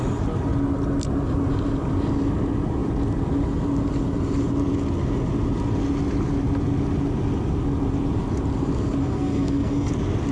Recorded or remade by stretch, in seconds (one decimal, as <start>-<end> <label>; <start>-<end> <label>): 0.0-9.0 recorded; 9.0-9.9 remade; 9.9-10.3 recorded